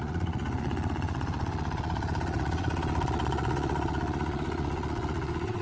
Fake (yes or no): yes